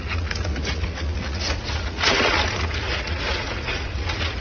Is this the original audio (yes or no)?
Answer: no